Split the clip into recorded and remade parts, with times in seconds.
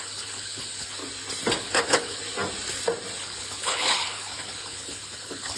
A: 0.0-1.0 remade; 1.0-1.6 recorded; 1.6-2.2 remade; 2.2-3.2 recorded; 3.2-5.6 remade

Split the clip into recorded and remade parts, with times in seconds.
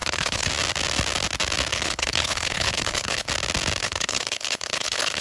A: 0.0-0.5 remade; 0.5-1.7 recorded; 1.7-3.3 remade; 3.3-3.8 recorded; 3.8-5.2 remade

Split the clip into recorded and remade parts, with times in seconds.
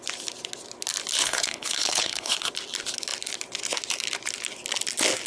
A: 0.0-1.2 recorded; 1.2-2.5 remade; 2.5-5.3 recorded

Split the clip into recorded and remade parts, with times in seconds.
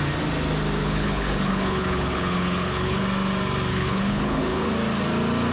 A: 0.0-0.8 recorded; 0.8-3.0 remade; 3.0-3.7 recorded; 3.7-4.7 remade; 4.7-5.5 recorded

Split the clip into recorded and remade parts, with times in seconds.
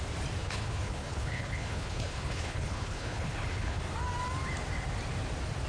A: 0.0-0.4 recorded; 0.4-3.8 remade; 3.8-5.7 recorded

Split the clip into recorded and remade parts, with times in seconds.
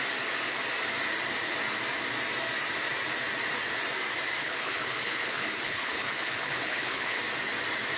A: 0.0-4.4 recorded; 4.4-7.2 remade; 7.2-8.0 recorded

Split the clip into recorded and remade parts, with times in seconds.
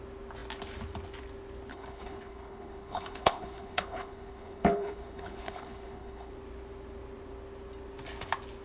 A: 0.0-1.7 recorded; 1.7-6.3 remade; 6.3-8.6 recorded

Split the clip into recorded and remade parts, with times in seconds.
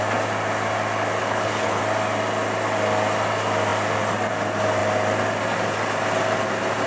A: 0.0-1.2 recorded; 1.2-1.8 remade; 1.8-6.9 recorded